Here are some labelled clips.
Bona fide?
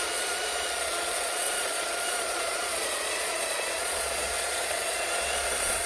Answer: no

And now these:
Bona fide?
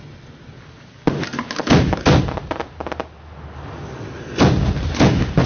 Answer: yes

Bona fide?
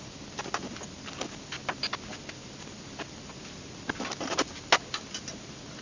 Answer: yes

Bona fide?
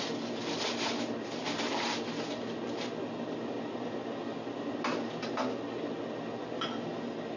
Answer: yes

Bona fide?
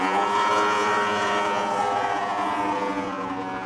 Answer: no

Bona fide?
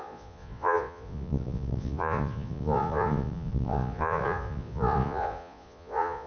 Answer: no